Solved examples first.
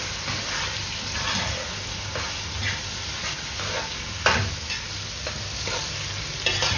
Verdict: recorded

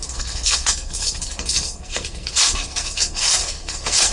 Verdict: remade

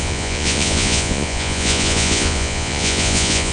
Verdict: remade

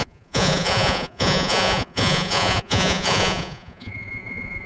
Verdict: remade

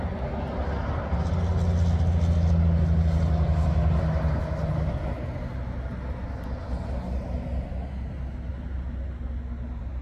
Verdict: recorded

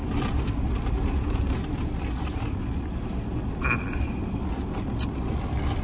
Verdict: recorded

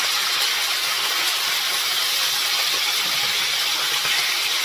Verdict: recorded